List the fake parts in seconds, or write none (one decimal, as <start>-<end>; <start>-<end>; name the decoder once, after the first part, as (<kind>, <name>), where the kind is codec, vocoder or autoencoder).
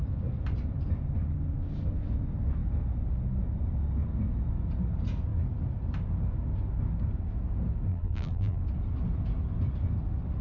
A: 7.9-8.6 (vocoder, BigVGAN v2)